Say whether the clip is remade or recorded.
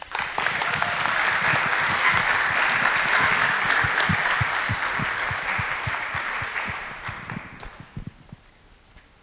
recorded